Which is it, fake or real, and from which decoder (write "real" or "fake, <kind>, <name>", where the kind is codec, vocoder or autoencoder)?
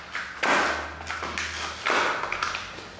real